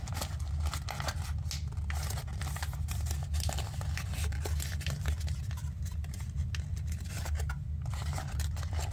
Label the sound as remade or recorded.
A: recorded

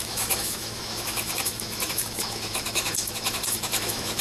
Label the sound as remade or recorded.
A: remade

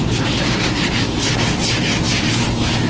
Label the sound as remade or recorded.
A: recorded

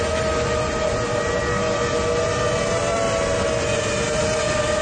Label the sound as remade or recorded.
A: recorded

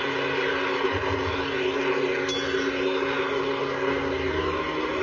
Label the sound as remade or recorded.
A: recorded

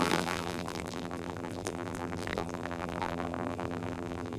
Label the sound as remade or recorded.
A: remade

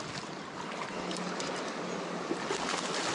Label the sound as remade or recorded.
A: recorded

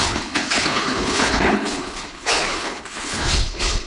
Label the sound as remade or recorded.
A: remade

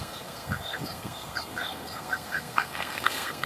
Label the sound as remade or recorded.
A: remade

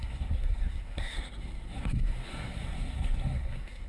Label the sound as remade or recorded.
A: remade